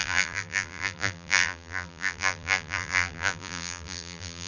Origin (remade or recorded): remade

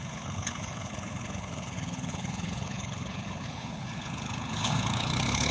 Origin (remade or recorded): remade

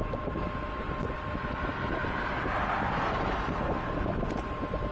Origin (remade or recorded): recorded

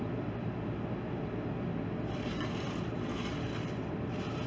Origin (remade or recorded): recorded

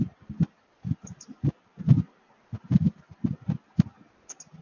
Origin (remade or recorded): recorded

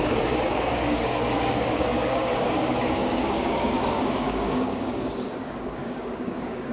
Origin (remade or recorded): remade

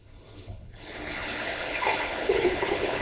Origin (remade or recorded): remade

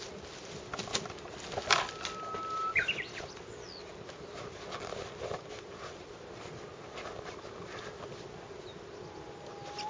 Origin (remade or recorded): recorded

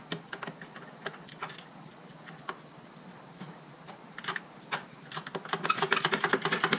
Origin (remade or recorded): recorded